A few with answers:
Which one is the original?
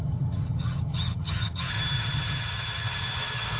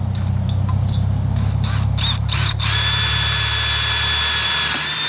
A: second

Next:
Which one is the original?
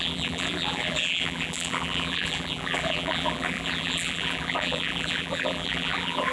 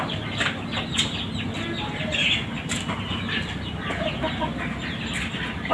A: second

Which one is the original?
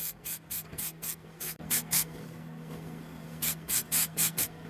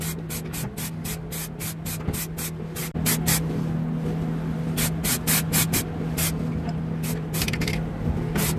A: second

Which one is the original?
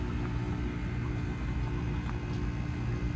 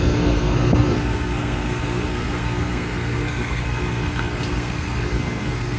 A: first